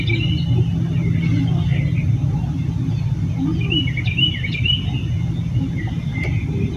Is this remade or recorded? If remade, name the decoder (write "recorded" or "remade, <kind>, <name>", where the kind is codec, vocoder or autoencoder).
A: recorded